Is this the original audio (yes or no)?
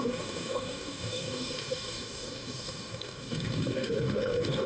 no